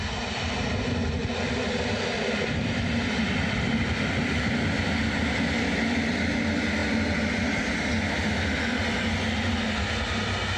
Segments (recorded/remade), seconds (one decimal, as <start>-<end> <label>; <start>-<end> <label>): 0.0-1.2 recorded; 1.2-4.1 remade; 4.1-10.6 recorded